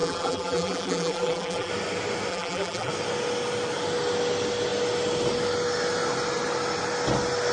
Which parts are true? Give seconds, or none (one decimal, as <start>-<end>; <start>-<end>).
1.7-2.3; 2.9-7.5